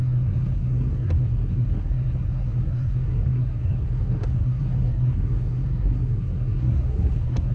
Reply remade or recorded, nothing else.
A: remade